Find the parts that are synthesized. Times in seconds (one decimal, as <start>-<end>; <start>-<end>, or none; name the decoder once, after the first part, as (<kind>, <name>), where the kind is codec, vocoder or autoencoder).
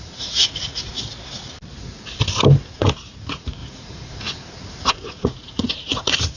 0.0-0.9 (vocoder, Vocos); 2.7-6.4